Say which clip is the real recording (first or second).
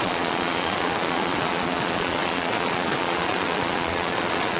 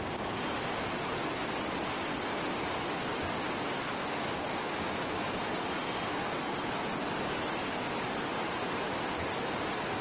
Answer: second